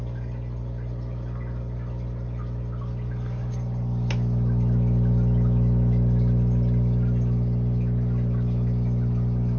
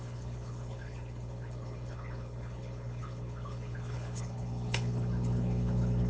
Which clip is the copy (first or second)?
second